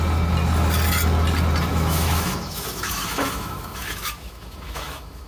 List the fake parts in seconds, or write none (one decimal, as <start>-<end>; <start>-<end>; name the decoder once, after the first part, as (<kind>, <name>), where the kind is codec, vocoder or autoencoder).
1.7-5.3 (autoencoder, DAC-VAE)